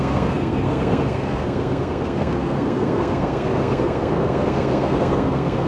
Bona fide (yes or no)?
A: no